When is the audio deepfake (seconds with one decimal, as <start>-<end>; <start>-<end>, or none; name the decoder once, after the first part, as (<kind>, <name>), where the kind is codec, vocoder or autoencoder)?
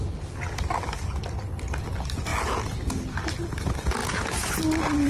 none